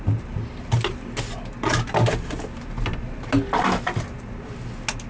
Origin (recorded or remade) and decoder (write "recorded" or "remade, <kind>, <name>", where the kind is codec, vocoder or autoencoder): recorded